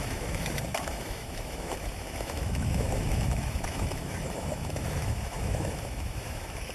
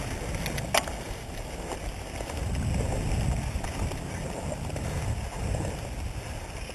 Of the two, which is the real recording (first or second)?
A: second